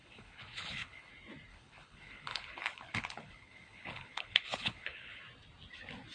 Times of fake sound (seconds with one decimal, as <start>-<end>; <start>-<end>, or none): 0.0-1.1; 1.5-5.2